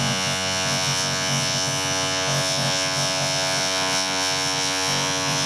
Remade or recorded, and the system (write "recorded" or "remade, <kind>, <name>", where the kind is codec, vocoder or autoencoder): remade, vocoder, Vocos